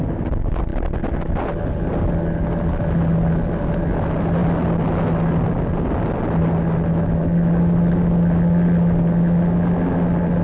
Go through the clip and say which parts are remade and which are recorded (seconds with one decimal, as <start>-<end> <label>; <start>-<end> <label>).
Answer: 0.0-10.4 recorded